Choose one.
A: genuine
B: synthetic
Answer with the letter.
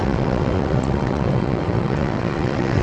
B